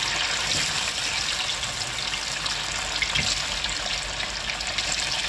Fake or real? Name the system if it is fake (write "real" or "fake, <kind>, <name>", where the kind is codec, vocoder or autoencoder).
real